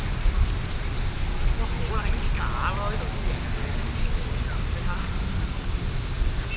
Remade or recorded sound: recorded